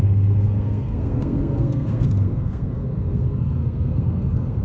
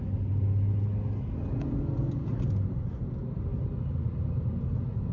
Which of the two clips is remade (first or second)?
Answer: first